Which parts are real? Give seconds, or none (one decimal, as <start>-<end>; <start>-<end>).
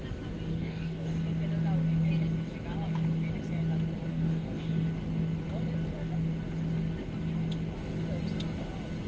0.0-0.5; 1.1-4.1; 4.7-9.1